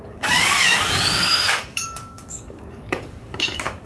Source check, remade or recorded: remade